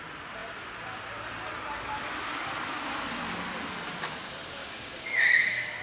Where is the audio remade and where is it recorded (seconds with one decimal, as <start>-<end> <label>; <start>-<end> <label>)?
0.0-4.6 recorded; 4.6-5.8 remade